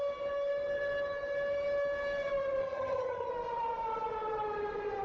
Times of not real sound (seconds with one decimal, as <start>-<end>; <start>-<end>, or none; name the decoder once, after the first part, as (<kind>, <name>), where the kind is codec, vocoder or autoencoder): 2.6-3.3 (vocoder, HiFi-GAN)